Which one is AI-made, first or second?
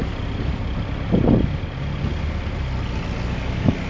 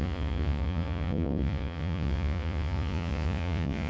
second